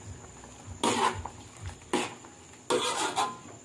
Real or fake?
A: real